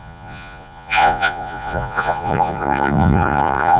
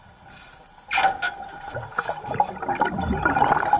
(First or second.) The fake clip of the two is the first